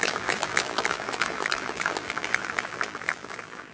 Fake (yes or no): yes